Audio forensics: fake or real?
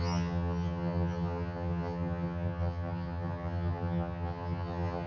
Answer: fake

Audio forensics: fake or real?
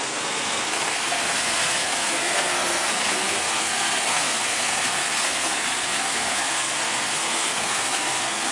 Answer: fake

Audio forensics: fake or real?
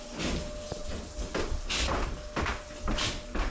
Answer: real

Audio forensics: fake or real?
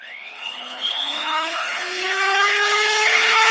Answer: fake